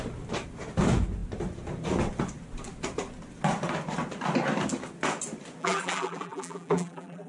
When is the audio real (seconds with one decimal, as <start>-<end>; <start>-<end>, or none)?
0.0-5.6